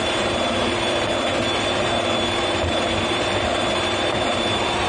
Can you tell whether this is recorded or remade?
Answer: remade